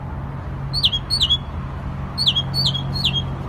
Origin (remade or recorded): recorded